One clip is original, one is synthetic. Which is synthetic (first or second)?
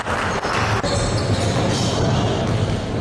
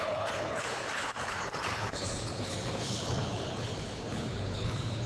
second